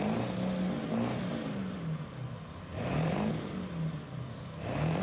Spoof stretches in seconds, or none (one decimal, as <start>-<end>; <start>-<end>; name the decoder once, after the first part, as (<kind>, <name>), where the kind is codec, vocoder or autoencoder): none